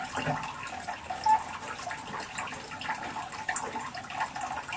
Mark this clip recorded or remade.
recorded